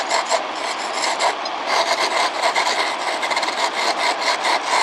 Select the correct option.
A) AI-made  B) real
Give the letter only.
B